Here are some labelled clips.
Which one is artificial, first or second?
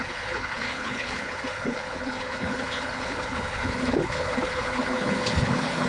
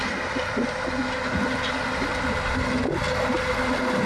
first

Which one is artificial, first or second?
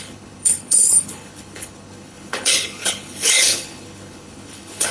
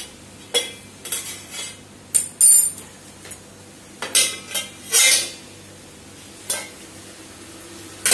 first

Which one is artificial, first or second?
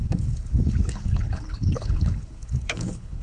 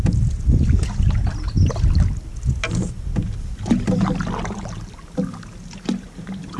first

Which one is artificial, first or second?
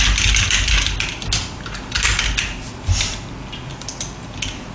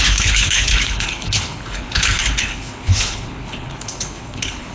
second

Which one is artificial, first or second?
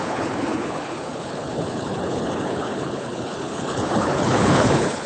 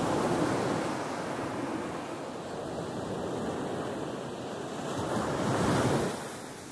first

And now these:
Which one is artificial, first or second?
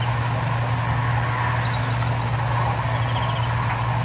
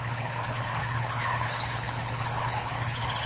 second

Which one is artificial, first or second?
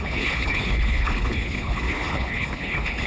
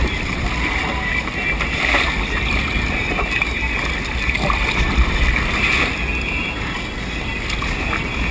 first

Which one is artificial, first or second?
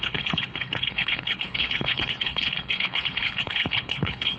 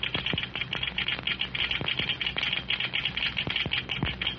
first